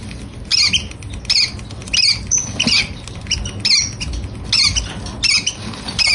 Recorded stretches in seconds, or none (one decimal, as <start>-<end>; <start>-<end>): 0.0-6.1